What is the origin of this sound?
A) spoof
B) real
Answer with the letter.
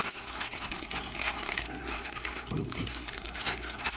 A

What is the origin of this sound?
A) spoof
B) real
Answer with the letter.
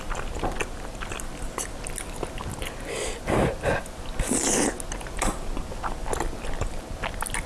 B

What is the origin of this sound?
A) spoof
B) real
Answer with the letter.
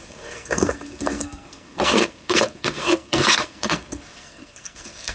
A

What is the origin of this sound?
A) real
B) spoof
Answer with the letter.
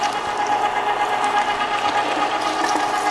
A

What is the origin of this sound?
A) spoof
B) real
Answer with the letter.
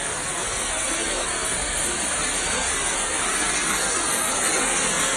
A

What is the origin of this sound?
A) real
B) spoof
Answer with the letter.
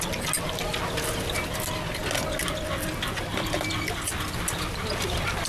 A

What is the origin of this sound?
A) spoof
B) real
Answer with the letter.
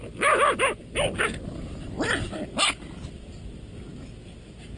B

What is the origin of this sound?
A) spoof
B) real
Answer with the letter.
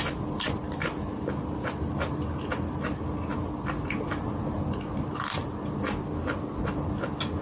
B